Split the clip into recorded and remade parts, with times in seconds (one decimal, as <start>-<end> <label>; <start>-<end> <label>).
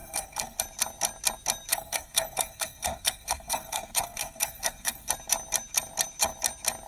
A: 0.0-0.6 remade; 0.6-1.7 recorded; 1.7-5.1 remade; 5.1-6.9 recorded